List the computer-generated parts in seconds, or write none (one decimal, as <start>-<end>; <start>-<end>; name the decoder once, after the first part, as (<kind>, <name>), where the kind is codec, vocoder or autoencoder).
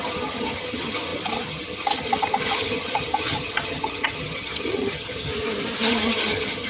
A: 0.0-5.3 (vocoder, HiFi-GAN); 5.9-6.7